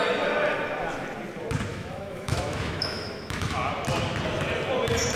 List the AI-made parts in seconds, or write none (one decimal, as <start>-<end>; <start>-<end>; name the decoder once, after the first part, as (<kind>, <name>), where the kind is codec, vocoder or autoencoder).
1.7-3.6 (autoencoder, DAC-VAE)